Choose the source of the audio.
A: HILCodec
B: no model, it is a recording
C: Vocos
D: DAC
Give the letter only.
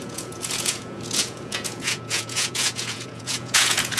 C